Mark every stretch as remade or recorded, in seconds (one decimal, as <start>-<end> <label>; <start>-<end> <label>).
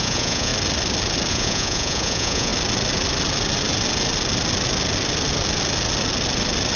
0.0-0.5 remade; 0.5-1.3 recorded; 1.3-2.5 remade; 2.5-6.8 recorded